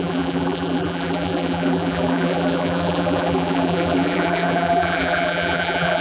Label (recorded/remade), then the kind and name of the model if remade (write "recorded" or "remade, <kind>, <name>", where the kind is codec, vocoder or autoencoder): remade, vocoder, BigVGAN v2